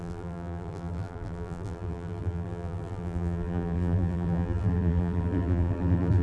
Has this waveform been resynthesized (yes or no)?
yes